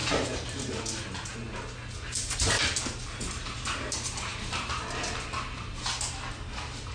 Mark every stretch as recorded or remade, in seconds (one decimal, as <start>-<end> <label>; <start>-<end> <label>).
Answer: 0.0-6.9 recorded